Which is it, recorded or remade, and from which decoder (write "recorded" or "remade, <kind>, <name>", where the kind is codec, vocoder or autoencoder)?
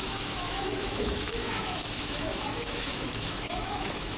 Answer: remade, autoencoder, DAC-VAE